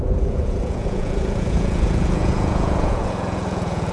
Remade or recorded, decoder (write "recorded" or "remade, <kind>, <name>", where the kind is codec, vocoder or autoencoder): remade, vocoder, Vocos